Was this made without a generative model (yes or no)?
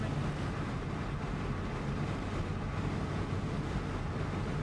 yes